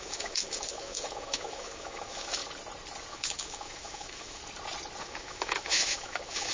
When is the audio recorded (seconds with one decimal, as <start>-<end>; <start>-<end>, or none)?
2.4-3.1; 4.4-5.0